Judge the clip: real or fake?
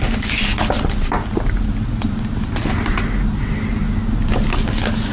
real